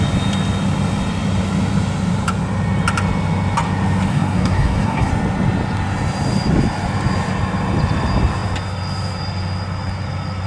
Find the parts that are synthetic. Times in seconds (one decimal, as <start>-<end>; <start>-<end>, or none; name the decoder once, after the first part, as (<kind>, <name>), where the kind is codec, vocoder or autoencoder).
4.1-5.1 (codec, SNAC)